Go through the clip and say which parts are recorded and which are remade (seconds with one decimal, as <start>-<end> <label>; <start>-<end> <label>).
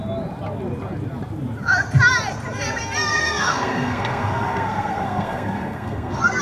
0.0-3.1 recorded; 3.1-6.4 remade